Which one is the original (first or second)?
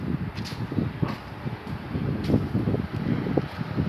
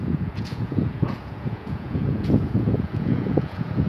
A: first